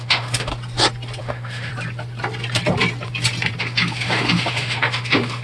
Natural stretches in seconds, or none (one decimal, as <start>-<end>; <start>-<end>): 0.5-1.2; 1.7-3.6